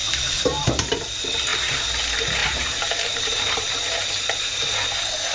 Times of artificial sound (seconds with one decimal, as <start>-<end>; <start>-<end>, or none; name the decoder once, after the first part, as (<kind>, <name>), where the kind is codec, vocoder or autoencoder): 0.0-0.9 (vocoder, BigVGAN v2); 1.5-2.0; 2.4-4.6